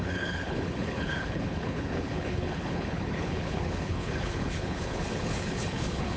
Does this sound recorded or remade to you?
remade